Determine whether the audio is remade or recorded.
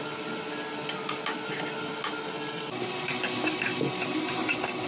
recorded